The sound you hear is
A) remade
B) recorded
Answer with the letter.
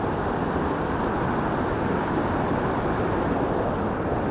B